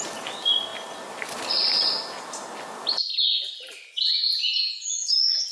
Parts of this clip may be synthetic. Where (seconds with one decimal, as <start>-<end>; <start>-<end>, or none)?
none